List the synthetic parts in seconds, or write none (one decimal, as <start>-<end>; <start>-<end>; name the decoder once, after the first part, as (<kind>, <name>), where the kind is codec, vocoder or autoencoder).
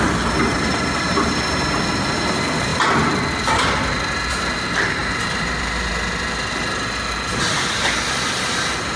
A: 5.0-5.9 (vocoder, BigVGAN v2)